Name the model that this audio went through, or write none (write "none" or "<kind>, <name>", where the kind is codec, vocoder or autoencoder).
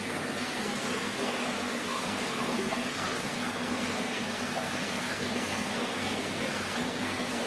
codec, SNAC